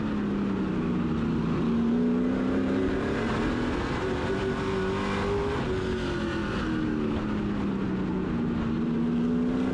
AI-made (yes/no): no